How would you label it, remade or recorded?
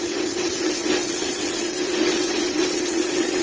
remade